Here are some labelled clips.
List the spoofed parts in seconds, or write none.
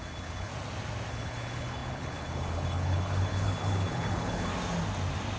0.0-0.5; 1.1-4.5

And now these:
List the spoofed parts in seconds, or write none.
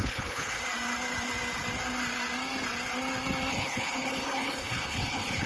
0.0-0.6; 3.5-5.5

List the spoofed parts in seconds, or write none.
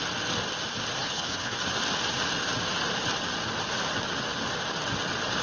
1.0-1.6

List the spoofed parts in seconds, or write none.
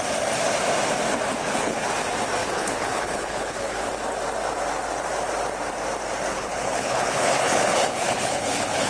1.4-1.9; 2.4-3.9; 6.3-8.9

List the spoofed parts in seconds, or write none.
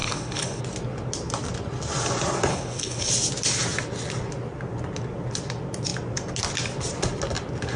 0.0-0.6; 2.5-3.1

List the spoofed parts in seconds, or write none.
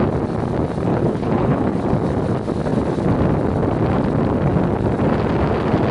0.9-1.8